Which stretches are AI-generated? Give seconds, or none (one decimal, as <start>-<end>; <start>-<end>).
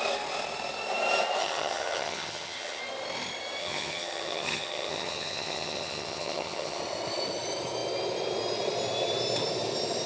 1.4-2.8; 3.6-6.8